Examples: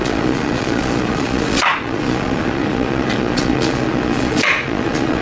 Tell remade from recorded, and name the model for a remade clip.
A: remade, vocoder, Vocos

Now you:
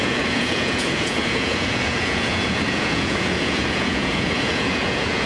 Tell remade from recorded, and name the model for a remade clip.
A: remade, vocoder, Vocos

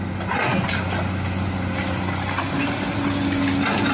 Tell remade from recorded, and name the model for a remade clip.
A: recorded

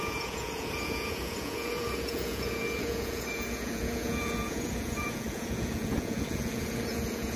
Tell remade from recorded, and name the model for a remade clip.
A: remade, vocoder, Vocos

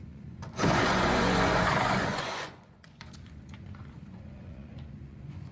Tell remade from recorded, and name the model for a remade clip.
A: remade, vocoder, Vocos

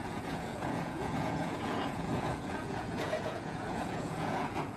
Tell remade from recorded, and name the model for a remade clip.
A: remade, vocoder, Vocos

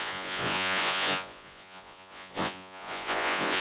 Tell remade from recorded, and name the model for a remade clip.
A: remade, vocoder, Vocos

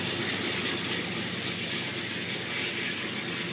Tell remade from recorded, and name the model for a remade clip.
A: recorded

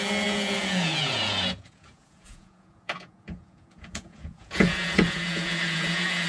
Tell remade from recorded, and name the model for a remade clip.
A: remade, vocoder, Vocos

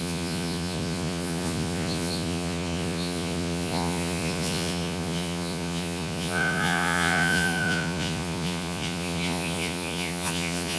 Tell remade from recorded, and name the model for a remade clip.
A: remade, vocoder, Vocos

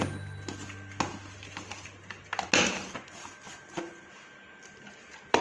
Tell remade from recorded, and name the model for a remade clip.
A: recorded